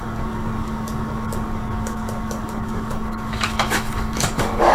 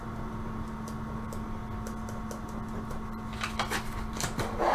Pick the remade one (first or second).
first